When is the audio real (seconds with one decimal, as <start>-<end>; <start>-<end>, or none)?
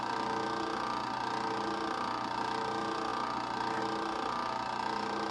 0.0-5.3